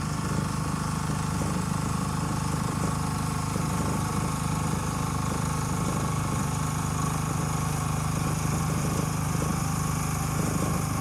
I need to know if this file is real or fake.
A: fake